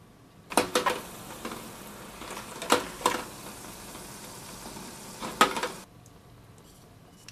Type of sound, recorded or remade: recorded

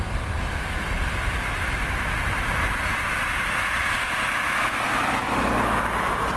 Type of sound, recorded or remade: recorded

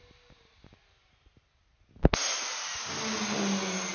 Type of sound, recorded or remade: recorded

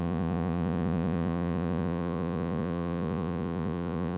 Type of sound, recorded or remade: remade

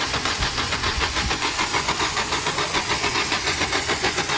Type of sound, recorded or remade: remade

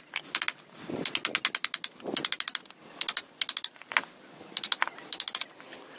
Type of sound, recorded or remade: recorded